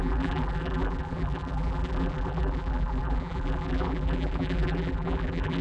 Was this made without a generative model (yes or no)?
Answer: no